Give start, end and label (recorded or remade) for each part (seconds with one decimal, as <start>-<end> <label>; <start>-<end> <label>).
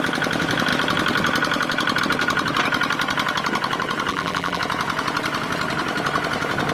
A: 0.0-4.1 recorded; 4.1-4.6 remade; 4.6-6.7 recorded